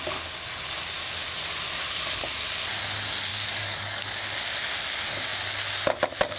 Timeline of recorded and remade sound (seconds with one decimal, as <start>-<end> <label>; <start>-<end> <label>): 0.0-3.3 recorded; 3.3-4.1 remade; 4.1-6.4 recorded